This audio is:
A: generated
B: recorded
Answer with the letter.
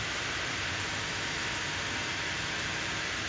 B